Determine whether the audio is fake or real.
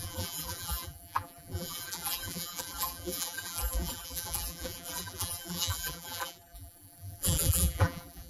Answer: fake